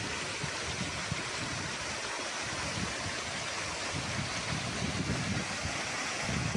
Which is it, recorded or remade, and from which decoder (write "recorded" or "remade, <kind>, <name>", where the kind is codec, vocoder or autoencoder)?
recorded